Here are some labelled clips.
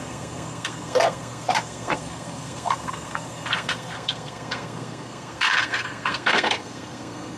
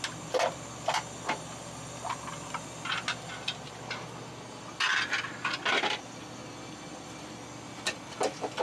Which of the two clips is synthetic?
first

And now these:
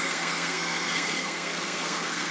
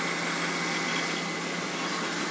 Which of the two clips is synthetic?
first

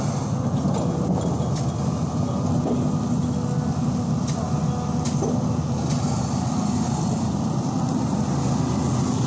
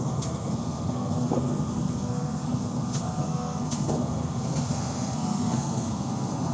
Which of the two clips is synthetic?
second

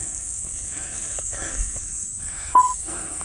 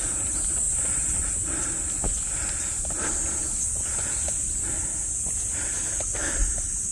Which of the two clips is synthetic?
first